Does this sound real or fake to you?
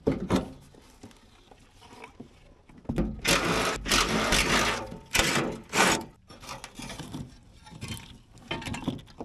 real